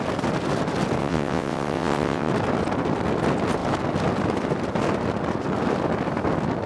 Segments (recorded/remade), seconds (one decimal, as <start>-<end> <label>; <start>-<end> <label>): 0.0-1.0 recorded; 1.0-2.3 remade; 2.3-6.7 recorded